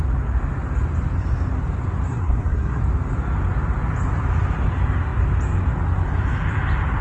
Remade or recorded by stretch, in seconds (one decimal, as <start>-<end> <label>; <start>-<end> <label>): 0.0-2.1 recorded; 2.1-2.8 remade; 2.8-7.0 recorded